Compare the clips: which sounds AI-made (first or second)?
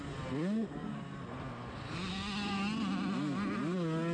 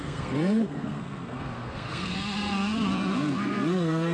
second